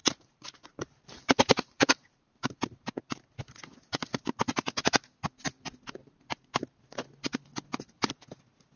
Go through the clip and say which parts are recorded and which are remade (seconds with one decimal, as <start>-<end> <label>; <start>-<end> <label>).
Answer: 0.0-3.0 remade; 3.0-8.8 recorded